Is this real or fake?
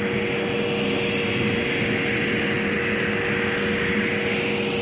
real